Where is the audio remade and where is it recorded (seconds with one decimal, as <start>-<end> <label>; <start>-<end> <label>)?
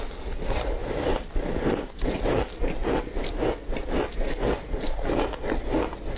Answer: 0.0-0.8 recorded; 0.8-2.2 remade; 2.2-6.2 recorded